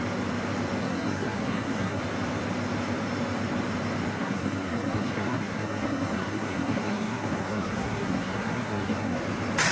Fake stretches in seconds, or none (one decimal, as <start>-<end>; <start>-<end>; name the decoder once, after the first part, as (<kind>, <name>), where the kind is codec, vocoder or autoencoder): 0.8-2.0 (codec, SNAC); 4.1-9.2